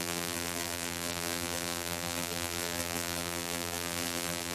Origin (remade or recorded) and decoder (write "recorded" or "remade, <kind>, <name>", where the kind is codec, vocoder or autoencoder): remade, vocoder, BigVGAN v2